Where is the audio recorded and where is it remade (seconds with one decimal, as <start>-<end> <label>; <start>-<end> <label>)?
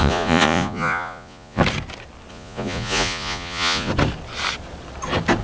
0.0-1.6 remade; 1.6-2.3 recorded; 2.3-3.9 remade; 3.9-5.4 recorded